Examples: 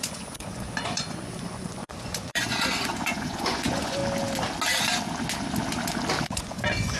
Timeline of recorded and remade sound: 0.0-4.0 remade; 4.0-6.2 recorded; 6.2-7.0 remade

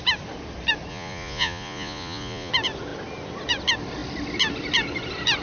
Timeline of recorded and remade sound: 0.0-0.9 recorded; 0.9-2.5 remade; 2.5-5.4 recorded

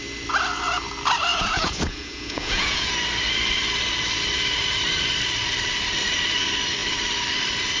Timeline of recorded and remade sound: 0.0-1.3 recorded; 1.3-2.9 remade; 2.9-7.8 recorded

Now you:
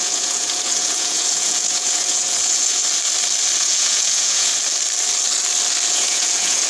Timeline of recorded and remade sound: 0.0-2.8 remade; 2.8-3.6 recorded; 3.6-4.5 remade; 4.5-5.9 recorded; 5.9-6.7 remade

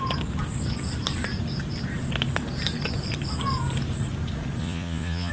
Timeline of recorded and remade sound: 0.0-4.6 recorded; 4.6-5.3 remade

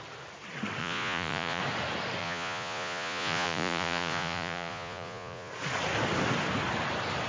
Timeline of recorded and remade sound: 0.0-0.8 recorded; 0.8-1.6 remade; 1.6-2.2 recorded; 2.2-5.5 remade; 5.5-7.3 recorded